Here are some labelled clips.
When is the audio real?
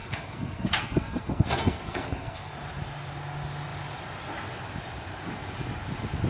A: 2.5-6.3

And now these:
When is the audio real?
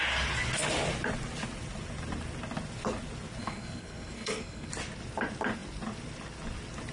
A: 0.0-3.4; 4.7-6.9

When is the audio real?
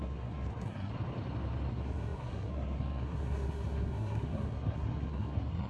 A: 0.9-1.7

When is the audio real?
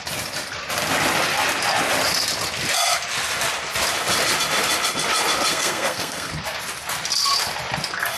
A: 0.0-5.5; 6.3-8.2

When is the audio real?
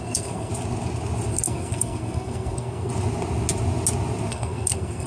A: 0.5-1.3; 2.9-4.3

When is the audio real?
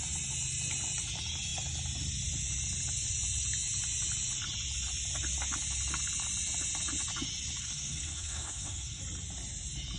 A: 0.0-7.6; 9.0-10.0